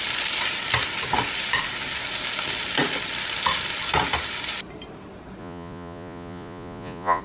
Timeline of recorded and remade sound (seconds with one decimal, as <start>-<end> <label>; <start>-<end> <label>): 0.0-5.4 recorded; 5.4-7.2 remade